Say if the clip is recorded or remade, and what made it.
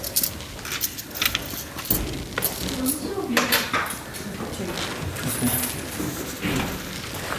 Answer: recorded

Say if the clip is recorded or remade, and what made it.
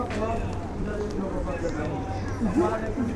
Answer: remade, vocoder, BigVGAN v2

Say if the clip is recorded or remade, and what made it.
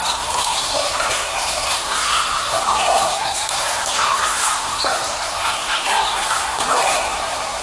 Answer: remade, codec, SNAC